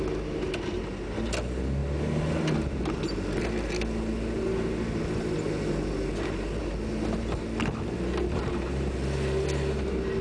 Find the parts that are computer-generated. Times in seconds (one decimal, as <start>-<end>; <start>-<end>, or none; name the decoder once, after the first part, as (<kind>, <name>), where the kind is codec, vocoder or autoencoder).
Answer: none